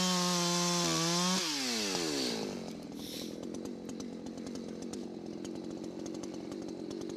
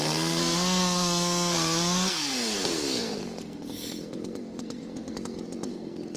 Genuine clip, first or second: first